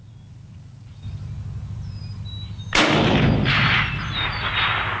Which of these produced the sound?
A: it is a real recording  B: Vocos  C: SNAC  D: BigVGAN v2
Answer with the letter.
A